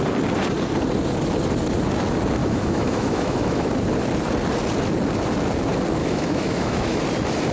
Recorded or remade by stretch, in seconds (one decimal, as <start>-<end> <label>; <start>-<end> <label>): 0.0-2.4 recorded; 2.4-3.7 remade; 3.7-6.0 recorded; 6.0-7.0 remade; 7.0-7.5 recorded